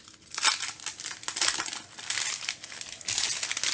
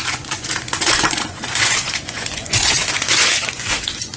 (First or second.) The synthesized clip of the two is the second